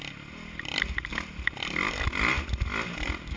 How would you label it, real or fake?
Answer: real